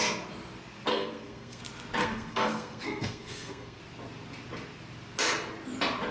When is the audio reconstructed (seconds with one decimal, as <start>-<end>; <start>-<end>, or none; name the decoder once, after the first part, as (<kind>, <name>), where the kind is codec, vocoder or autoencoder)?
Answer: 0.9-1.6 (codec, SNAC); 2.0-3.8